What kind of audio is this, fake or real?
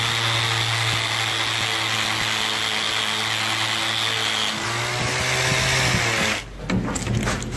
real